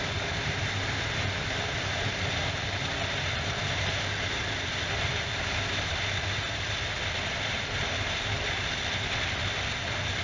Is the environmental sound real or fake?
real